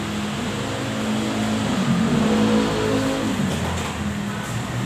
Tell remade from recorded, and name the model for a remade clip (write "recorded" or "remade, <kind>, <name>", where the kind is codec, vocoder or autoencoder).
recorded